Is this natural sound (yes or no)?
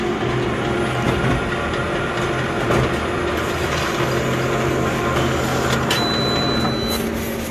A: yes